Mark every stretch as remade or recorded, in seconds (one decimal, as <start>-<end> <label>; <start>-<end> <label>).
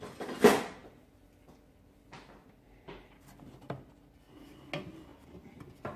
0.0-6.0 recorded